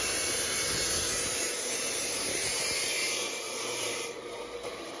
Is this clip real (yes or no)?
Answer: no